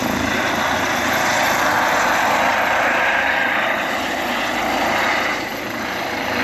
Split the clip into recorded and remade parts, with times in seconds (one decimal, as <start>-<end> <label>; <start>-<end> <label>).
0.0-6.4 recorded